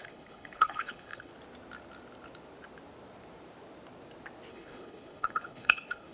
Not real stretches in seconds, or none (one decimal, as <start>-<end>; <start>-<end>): 0.0-1.3; 4.5-6.1